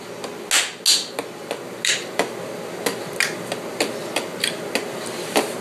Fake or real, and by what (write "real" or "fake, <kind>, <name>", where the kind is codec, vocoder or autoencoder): real